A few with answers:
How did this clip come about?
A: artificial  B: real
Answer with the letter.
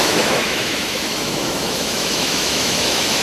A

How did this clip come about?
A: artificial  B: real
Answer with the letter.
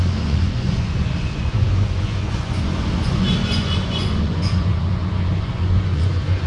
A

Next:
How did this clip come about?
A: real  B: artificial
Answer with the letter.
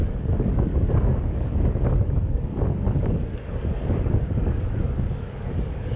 B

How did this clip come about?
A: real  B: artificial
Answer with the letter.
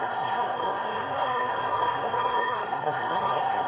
B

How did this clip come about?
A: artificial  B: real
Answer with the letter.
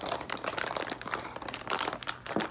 A